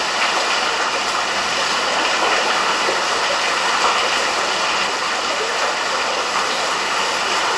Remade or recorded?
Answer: recorded